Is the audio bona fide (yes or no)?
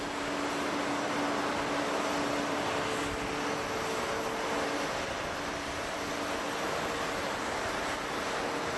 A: yes